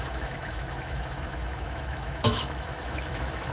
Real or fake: fake